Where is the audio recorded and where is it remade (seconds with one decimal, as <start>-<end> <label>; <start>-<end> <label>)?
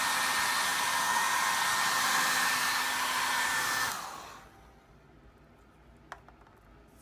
0.0-7.0 recorded